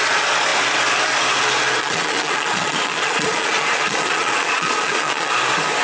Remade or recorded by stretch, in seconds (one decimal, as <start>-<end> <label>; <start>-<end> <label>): 0.0-1.8 recorded; 1.8-5.3 remade; 5.3-5.8 recorded